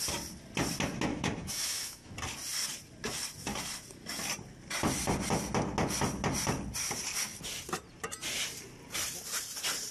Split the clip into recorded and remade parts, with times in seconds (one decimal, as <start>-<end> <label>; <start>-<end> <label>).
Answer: 0.0-1.1 recorded; 1.1-2.1 remade; 2.1-9.9 recorded